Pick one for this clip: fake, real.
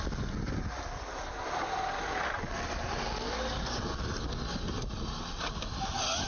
real